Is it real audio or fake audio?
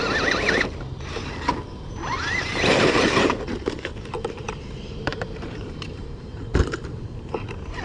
fake